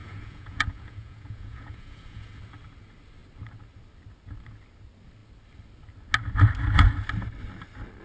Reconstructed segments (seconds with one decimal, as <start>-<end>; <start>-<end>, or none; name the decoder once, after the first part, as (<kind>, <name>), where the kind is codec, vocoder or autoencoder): 0.0-2.4 (vocoder, Vocos)